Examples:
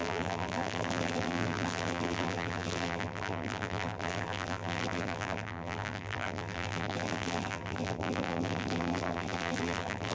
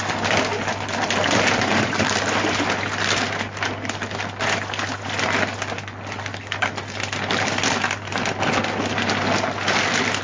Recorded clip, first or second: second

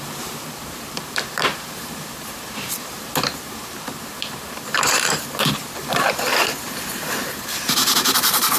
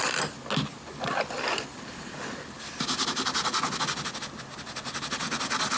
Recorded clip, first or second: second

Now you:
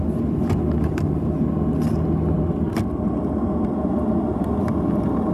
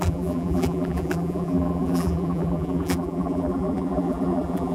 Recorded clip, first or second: first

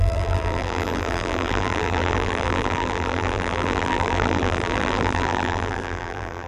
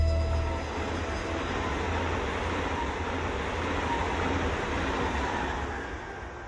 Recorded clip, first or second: second